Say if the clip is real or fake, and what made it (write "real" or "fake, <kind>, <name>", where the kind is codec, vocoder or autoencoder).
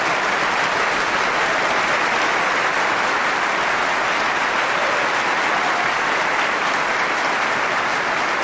real